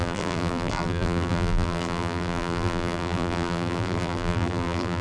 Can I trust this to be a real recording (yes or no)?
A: no